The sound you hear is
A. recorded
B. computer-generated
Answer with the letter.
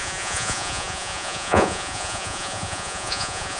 B